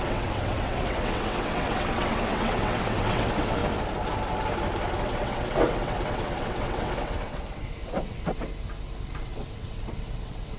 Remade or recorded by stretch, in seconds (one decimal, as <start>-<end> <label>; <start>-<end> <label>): 0.0-3.6 remade; 3.6-5.0 recorded; 5.0-8.5 remade; 8.5-9.2 recorded; 9.2-10.6 remade